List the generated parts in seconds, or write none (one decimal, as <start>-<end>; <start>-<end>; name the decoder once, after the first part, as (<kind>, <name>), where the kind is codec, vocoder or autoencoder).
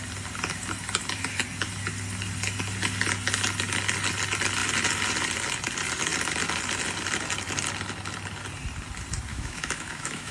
9.3-10.3 (autoencoder, DAC-VAE)